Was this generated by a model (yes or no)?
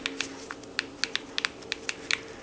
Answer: no